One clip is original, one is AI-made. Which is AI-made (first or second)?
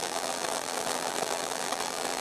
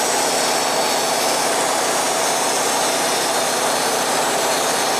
first